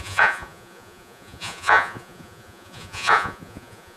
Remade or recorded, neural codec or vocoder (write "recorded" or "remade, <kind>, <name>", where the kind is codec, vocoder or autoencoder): remade, vocoder, Vocos